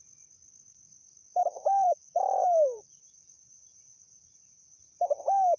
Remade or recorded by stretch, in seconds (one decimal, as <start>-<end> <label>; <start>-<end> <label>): 0.0-1.4 recorded; 1.4-4.8 remade; 4.8-5.6 recorded